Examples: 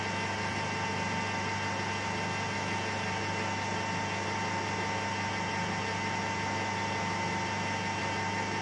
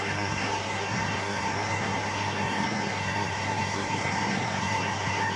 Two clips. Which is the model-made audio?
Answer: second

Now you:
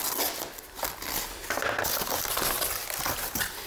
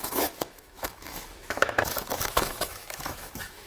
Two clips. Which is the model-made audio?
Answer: second